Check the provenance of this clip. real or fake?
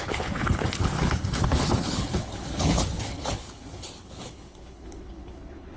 fake